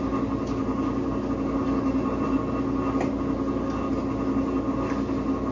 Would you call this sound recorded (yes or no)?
yes